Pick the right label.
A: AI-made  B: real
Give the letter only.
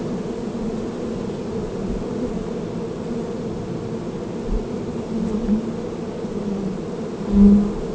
B